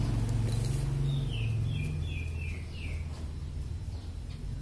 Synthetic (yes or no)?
no